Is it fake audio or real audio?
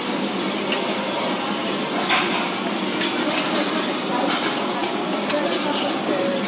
real